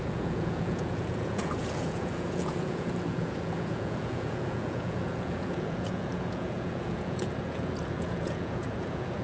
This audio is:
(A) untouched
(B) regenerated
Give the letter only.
B